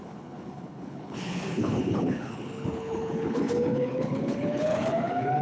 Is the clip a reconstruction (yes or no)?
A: yes